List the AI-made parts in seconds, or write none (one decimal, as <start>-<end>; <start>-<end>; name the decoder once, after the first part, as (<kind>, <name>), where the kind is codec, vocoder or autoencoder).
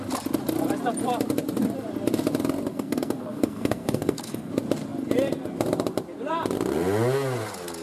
2.7-4.5 (codec, SNAC)